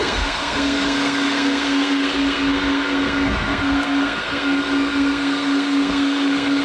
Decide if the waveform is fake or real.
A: fake